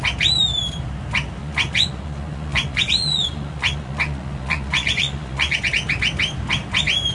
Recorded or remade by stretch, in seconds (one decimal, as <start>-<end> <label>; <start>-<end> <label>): 0.0-1.4 recorded; 1.4-5.7 remade; 5.7-7.1 recorded